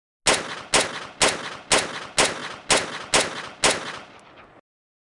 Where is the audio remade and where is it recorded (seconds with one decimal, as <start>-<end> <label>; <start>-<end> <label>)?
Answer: 0.0-5.1 recorded